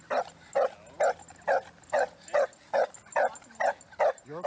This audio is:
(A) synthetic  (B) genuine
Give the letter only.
B